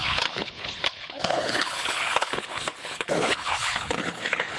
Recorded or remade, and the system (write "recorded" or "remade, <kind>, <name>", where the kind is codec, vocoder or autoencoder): remade, codec, HILCodec